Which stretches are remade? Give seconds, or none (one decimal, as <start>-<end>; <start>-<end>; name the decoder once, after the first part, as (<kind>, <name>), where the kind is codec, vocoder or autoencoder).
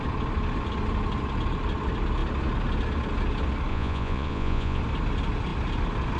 3.7-4.8 (vocoder, Vocos)